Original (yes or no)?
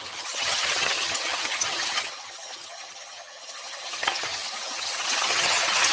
no